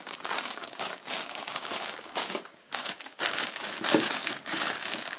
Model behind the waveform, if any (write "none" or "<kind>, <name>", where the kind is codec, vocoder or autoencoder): codec, DAC